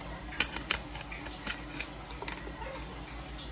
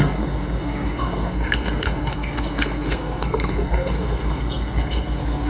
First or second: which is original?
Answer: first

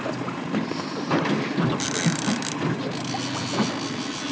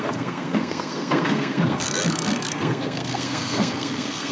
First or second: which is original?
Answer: first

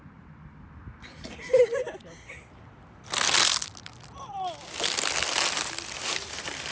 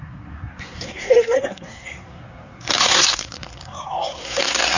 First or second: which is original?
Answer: first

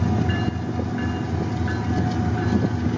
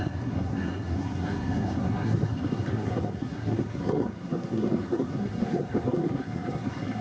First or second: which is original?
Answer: first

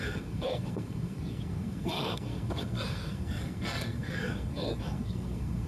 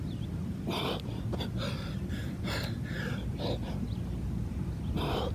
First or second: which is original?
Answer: second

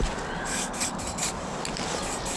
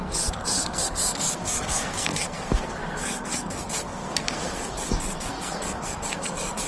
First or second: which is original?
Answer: first